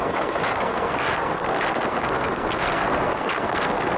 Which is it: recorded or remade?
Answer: remade